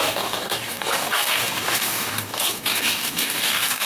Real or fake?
fake